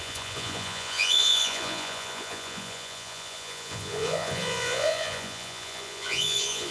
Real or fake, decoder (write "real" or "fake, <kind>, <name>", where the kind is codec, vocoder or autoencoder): fake, vocoder, Vocos